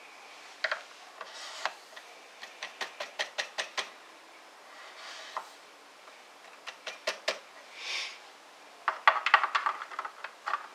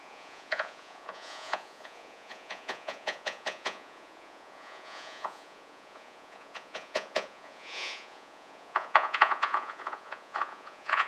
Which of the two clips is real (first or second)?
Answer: first